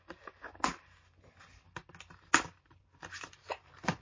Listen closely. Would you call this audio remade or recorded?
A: recorded